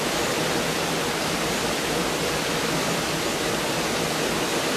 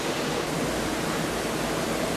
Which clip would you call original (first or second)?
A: second